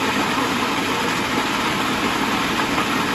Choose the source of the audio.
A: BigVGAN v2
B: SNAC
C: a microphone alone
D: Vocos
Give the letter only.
C